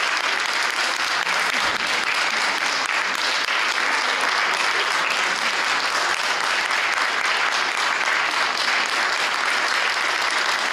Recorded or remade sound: recorded